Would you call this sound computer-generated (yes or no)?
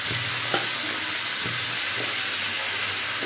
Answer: no